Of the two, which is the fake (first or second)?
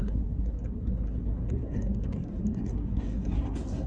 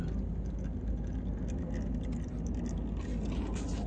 first